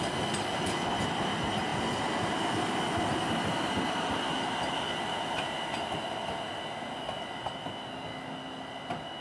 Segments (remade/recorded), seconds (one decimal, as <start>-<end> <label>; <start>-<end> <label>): 0.0-9.2 recorded